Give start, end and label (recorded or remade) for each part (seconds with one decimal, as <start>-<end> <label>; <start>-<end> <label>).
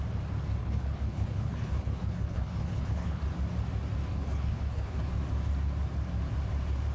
0.0-0.6 recorded; 0.6-3.2 remade; 3.2-4.1 recorded; 4.1-5.1 remade; 5.1-6.9 recorded